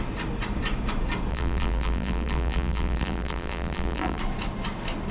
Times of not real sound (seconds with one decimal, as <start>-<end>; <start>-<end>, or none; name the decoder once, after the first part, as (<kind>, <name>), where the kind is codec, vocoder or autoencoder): 1.3-4.2 (vocoder, BigVGAN v2)

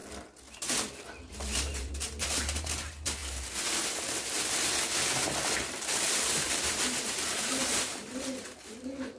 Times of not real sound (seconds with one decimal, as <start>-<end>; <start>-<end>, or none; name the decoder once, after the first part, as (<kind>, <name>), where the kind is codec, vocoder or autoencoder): 1.3-3.2 (vocoder, BigVGAN v2); 6.2-9.2